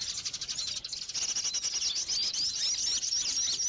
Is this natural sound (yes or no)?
yes